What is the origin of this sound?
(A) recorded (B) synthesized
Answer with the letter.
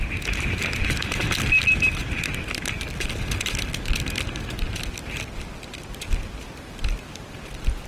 A